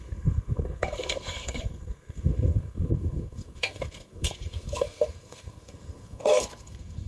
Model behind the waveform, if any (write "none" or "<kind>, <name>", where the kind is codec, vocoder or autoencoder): codec, SNAC